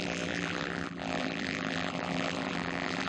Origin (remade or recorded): remade